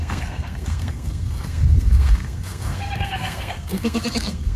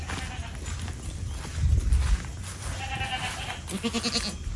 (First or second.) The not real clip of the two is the first